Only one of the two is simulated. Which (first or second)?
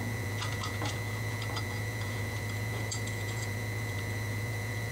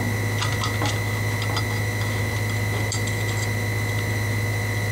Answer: first